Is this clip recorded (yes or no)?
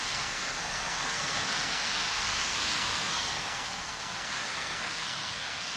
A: no